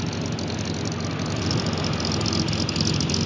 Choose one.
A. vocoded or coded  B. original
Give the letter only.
B